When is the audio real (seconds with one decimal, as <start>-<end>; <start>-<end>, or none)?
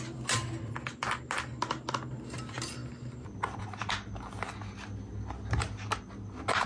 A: 0.0-6.7